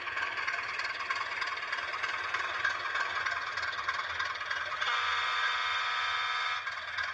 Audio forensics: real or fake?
real